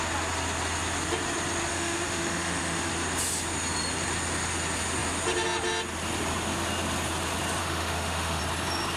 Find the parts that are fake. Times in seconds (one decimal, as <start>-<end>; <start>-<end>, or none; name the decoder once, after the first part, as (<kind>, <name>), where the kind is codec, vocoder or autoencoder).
1.7-2.9 (autoencoder, DAC-VAE); 7.6-8.4